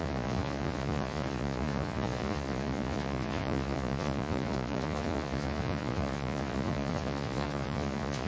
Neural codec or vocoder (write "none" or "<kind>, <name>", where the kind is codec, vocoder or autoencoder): vocoder, Vocos